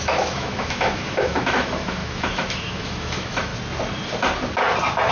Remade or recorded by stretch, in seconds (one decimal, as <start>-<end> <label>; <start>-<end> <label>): 0.0-3.5 remade; 3.5-5.1 recorded